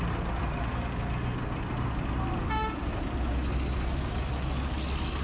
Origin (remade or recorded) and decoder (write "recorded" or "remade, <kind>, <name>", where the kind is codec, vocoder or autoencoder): recorded